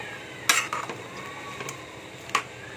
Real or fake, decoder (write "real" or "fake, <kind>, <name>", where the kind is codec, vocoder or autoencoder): real